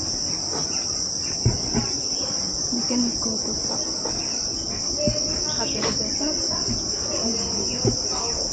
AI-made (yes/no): no